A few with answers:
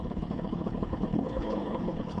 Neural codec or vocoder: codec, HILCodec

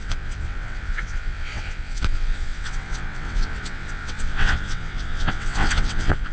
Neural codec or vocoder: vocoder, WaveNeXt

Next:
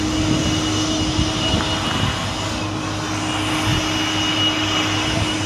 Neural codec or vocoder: none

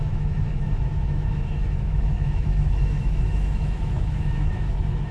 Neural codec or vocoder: autoencoder, DAC-VAE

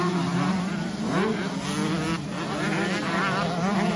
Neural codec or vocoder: none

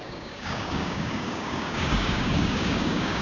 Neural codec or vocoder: codec, DAC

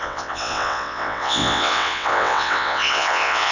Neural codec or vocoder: vocoder, WaveNeXt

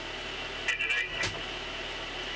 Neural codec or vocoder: none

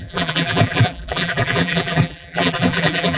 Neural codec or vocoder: vocoder, BigVGAN v2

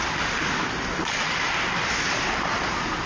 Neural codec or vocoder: none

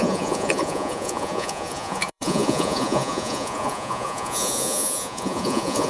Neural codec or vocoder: vocoder, Vocos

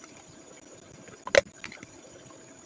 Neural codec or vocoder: none